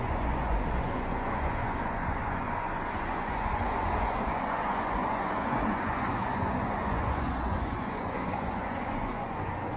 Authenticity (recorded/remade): remade